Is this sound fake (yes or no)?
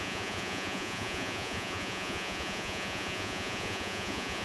yes